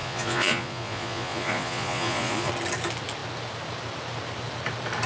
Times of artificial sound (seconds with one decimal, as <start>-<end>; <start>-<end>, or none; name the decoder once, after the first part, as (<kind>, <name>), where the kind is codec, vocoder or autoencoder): 0.0-2.5 (vocoder, Vocos)